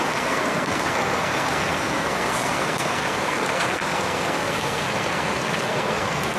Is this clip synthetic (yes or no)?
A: yes